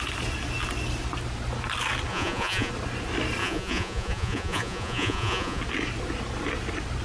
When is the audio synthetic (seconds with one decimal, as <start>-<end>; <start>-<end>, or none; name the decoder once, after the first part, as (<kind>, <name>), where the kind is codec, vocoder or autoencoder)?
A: 2.1-2.7 (vocoder, Vocos); 3.4-5.6